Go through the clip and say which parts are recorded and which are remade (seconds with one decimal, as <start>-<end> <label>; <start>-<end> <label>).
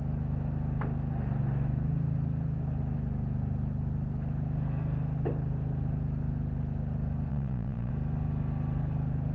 0.0-7.3 recorded; 7.3-7.9 remade; 7.9-9.3 recorded